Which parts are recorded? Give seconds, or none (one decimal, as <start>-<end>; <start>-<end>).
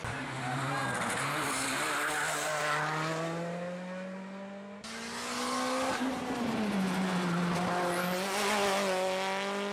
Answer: 0.0-9.7